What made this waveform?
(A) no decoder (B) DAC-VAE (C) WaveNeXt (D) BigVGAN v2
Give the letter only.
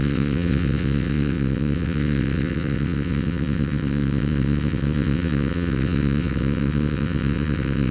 C